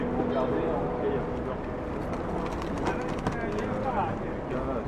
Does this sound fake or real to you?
real